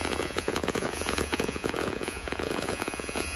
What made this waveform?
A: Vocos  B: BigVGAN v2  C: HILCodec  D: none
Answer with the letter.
A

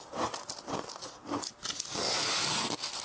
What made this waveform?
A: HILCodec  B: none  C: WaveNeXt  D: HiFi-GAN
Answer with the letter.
B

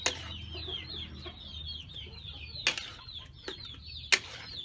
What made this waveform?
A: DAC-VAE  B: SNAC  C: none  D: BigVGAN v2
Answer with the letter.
C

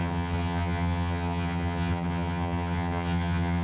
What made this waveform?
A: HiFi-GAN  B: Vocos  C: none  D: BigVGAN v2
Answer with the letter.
A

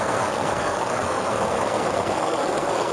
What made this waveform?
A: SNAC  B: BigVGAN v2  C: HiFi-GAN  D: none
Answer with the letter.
A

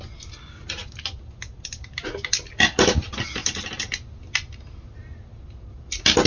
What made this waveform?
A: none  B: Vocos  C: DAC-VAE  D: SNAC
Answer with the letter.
A